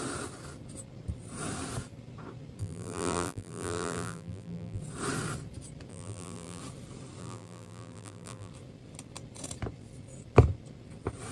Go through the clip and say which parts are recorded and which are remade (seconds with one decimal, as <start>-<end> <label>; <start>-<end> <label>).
0.0-2.6 recorded; 2.6-4.8 remade; 4.8-5.9 recorded; 5.9-6.6 remade; 6.6-7.2 recorded; 7.2-8.5 remade; 8.5-11.3 recorded